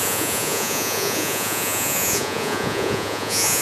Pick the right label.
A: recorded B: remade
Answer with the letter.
B